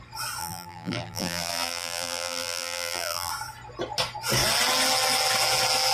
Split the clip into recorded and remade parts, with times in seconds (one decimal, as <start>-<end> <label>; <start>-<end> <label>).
0.0-0.4 recorded; 0.4-3.3 remade; 3.3-5.9 recorded